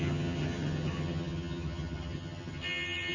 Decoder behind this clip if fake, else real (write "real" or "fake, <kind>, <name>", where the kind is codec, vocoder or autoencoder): fake, vocoder, HiFi-GAN